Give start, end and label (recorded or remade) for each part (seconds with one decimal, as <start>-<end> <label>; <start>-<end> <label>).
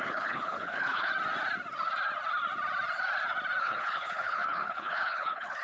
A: 0.0-1.1 remade; 1.1-3.6 recorded; 3.6-5.6 remade